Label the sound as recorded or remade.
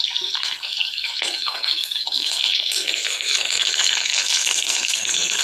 remade